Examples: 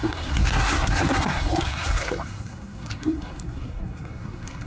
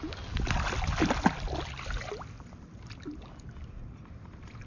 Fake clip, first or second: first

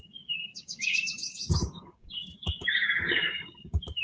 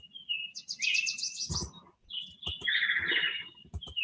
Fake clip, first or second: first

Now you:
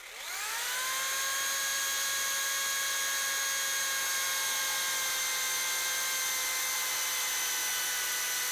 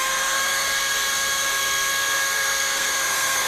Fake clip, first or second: second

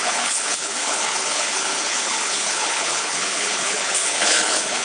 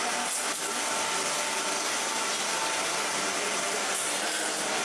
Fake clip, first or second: first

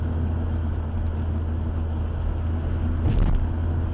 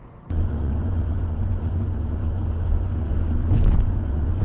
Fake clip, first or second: second